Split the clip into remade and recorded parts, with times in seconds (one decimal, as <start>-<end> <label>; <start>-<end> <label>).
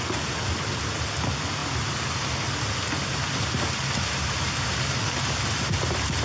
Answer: 0.0-6.2 recorded